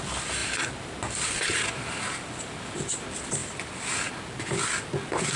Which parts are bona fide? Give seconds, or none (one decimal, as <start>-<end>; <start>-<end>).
0.0-0.4; 2.9-3.4; 4.1-5.4